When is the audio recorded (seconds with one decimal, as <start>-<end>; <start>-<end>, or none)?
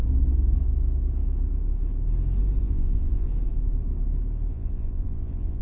0.0-2.6; 3.3-4.5